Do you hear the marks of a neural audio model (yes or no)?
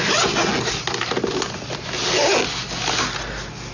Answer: no